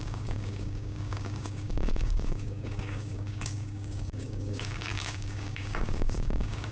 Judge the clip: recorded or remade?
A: remade